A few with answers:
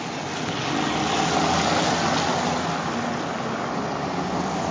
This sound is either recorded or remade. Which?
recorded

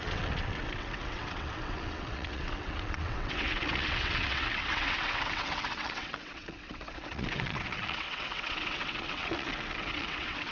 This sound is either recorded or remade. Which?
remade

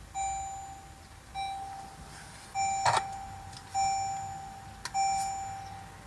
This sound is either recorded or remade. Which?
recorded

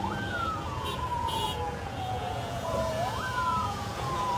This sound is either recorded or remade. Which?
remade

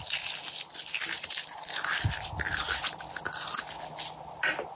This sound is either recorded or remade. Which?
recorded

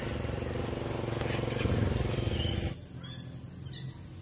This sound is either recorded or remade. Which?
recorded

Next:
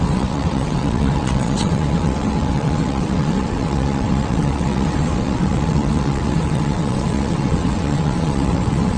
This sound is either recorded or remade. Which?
remade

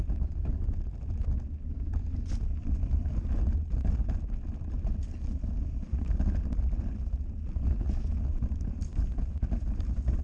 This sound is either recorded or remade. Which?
recorded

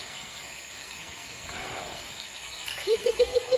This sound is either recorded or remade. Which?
remade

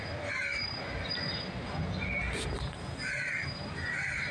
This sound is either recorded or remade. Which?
recorded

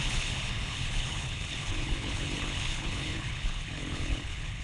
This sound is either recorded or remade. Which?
remade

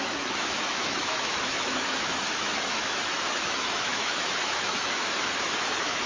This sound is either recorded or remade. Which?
remade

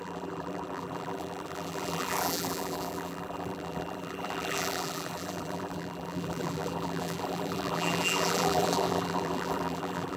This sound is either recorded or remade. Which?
remade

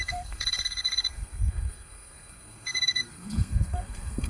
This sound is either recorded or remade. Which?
remade